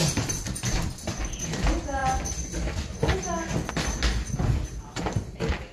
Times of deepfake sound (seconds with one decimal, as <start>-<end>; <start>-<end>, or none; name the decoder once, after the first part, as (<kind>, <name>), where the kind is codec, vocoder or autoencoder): none

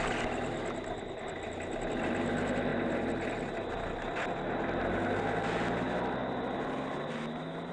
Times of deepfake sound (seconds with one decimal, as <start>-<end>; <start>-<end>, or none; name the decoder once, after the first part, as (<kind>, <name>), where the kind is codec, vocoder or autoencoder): none

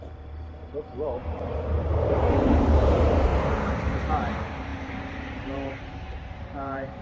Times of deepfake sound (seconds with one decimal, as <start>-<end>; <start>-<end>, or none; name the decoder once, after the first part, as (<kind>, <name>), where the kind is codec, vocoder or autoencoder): 0.0-1.2 (vocoder, BigVGAN v2); 2.0-3.3; 4.0-7.0

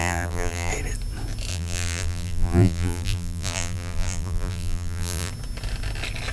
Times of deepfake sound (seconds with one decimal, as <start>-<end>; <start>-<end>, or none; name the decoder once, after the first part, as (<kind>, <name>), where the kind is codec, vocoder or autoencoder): 0.0-0.7 (vocoder, BigVGAN v2); 1.5-5.3

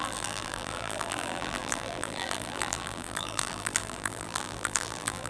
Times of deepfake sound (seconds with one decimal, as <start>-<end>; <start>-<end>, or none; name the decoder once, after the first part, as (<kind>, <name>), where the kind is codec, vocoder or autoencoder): 0.0-5.3 (vocoder, BigVGAN v2)

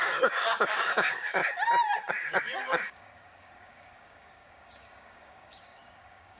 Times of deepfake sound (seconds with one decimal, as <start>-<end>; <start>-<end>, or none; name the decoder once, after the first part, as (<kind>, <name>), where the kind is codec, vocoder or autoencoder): 0.0-1.4 (codec, DAC); 2.1-6.4

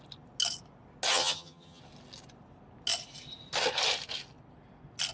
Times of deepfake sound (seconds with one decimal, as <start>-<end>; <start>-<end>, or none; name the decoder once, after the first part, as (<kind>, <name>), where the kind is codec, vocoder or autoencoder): 1.1-1.8 (vocoder, HiFi-GAN)